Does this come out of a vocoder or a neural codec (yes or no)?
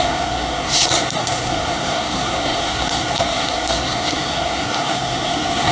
yes